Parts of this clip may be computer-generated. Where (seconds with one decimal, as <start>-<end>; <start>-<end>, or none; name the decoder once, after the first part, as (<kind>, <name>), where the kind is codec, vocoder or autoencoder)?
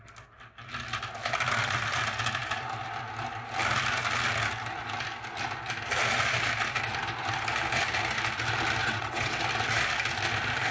8.8-9.4 (vocoder, WaveNeXt)